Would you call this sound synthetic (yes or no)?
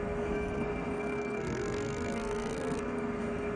yes